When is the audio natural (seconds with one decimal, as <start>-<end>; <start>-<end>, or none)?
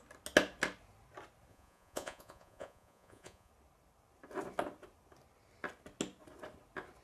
0.0-1.5; 3.5-7.0